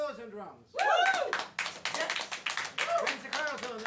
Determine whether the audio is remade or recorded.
recorded